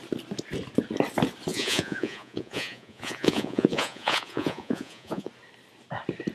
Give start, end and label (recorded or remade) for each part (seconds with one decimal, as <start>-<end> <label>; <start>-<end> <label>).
0.0-1.5 recorded; 1.5-5.3 remade; 5.3-6.3 recorded